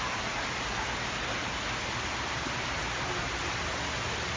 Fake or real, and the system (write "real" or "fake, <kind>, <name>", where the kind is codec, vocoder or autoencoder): real